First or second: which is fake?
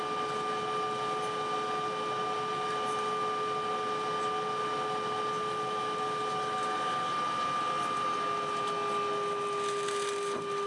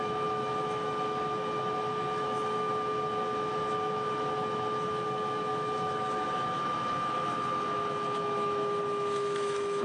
second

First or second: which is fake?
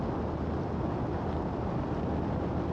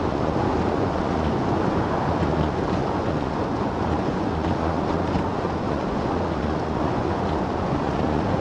second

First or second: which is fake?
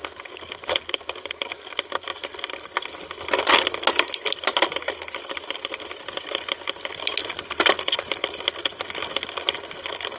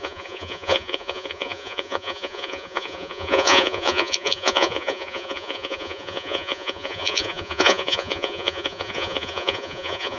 second